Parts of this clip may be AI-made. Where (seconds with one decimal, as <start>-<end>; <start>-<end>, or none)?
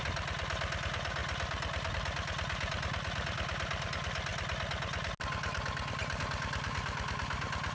none